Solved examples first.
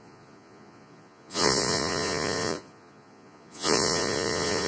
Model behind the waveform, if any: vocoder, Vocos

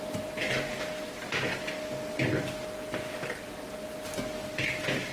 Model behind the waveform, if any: none